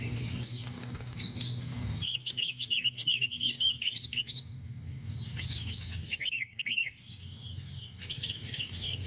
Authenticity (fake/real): fake